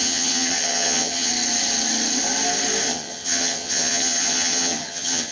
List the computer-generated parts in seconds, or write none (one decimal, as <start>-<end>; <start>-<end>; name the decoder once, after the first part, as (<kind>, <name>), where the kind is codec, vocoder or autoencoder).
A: 0.0-1.3 (vocoder, HiFi-GAN); 2.9-5.3